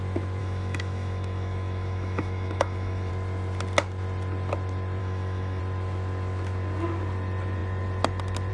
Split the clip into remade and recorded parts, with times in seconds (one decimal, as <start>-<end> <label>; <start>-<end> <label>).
0.0-0.4 recorded; 0.4-3.1 remade; 3.1-5.0 recorded; 5.0-5.6 remade; 5.6-8.5 recorded